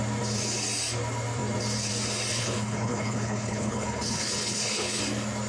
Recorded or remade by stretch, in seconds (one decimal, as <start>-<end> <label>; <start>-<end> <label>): 0.0-2.3 recorded; 2.3-5.0 remade; 5.0-5.5 recorded